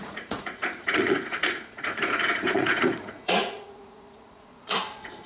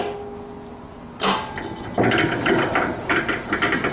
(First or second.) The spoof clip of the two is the first